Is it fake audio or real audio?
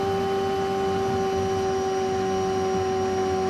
real